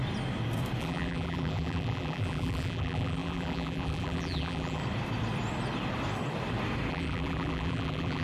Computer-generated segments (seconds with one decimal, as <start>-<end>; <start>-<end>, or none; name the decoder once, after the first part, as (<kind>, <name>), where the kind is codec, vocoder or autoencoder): 0.8-4.8 (vocoder, BigVGAN v2); 6.9-8.2